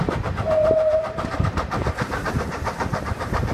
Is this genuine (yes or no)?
no